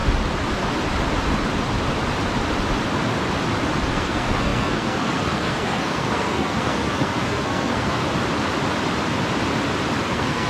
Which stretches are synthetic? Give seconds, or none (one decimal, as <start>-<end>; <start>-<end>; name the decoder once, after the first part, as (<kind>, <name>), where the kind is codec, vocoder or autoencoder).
3.9-8.0 (codec, SNAC); 10.0-10.5